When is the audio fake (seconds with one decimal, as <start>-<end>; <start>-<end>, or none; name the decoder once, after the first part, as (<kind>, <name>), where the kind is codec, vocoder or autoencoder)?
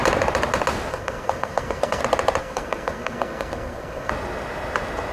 0.9-2.0 (codec, SNAC); 2.4-4.1